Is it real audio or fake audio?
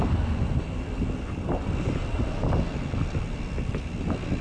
real